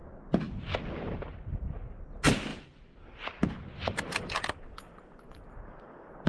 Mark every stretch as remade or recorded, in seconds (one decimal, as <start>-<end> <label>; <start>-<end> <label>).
0.0-1.3 recorded; 1.3-2.1 remade; 2.1-2.5 recorded; 2.5-5.0 remade; 5.0-6.3 recorded